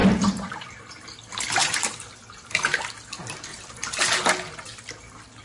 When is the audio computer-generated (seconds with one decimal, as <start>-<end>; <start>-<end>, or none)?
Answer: 0.0-0.8; 1.6-2.1; 3.5-4.0